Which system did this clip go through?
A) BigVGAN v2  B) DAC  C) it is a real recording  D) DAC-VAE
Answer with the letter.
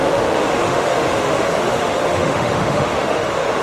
D